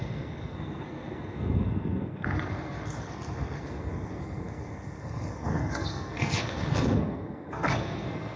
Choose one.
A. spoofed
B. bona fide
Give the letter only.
A